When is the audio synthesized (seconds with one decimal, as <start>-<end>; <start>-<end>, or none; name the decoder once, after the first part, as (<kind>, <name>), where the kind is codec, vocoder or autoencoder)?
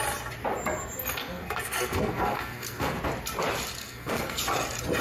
1.2-3.0 (codec, SNAC); 3.8-4.4